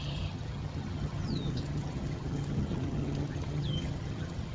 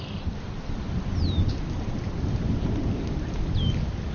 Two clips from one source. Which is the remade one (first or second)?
first